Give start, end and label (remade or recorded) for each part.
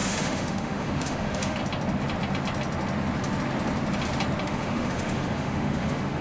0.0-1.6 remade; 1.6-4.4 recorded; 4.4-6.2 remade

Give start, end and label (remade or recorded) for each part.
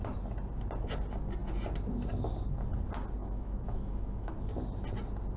0.0-3.2 recorded; 3.2-4.3 remade; 4.3-5.4 recorded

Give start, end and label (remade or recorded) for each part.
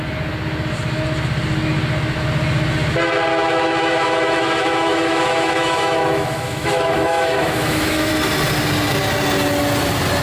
0.0-3.3 recorded; 3.3-8.1 remade; 8.1-10.2 recorded